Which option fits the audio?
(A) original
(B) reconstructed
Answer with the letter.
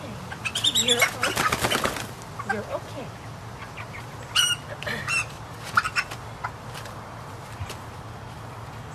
A